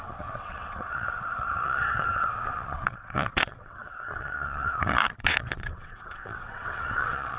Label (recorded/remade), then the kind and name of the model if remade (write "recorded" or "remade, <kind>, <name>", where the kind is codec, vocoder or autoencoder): remade, vocoder, WaveNeXt